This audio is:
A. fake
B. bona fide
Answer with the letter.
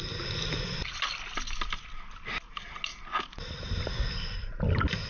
B